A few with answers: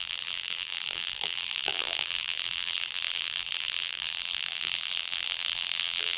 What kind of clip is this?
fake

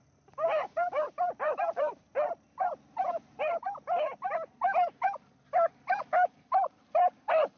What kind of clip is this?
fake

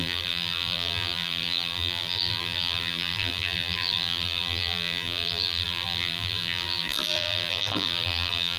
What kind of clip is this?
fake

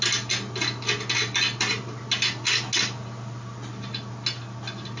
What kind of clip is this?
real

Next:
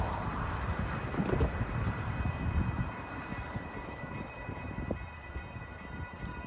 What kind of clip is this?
fake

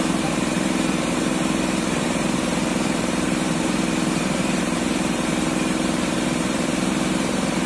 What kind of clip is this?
fake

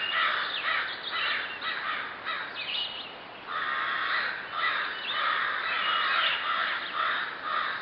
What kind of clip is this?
real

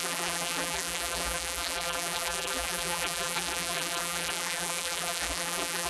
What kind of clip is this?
fake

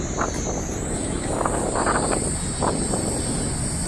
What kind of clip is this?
real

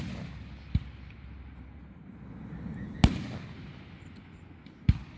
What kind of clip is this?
real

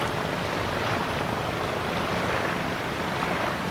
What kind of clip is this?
fake